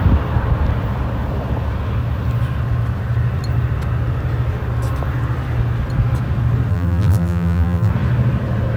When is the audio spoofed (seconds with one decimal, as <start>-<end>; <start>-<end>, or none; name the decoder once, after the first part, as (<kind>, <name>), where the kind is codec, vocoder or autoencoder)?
6.7-7.9 (vocoder, BigVGAN v2)